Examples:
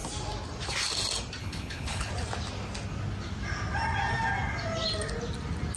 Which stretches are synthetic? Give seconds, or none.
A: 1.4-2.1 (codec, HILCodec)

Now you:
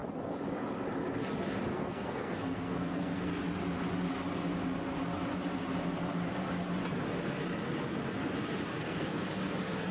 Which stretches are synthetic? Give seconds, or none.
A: 1.7-3.4 (codec, SNAC); 8.7-9.2